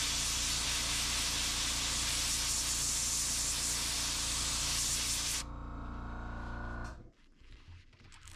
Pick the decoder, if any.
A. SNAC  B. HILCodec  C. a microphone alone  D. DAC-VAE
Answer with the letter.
C